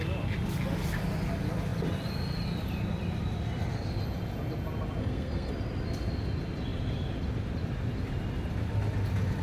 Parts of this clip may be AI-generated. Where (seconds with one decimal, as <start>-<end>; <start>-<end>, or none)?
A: 5.0-5.5